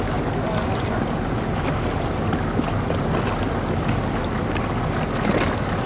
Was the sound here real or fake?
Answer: real